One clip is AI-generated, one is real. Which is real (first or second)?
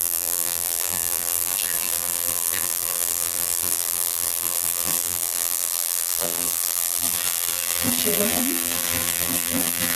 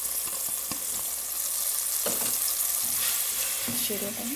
second